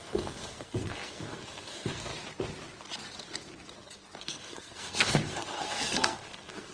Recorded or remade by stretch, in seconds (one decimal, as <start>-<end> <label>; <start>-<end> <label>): 0.0-2.1 remade; 2.1-4.2 recorded; 4.2-6.7 remade